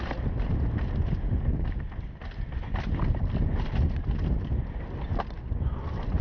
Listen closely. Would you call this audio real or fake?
real